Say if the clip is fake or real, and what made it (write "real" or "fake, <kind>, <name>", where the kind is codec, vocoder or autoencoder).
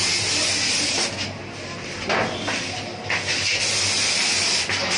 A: real